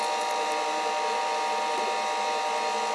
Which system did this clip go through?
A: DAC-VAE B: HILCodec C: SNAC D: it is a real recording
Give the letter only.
D